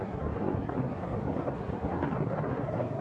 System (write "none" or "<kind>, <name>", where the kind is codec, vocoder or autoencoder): codec, SNAC